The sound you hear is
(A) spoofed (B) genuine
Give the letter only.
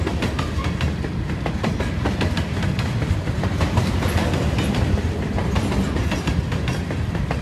B